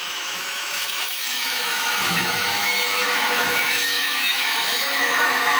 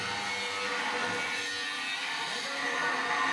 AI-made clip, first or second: first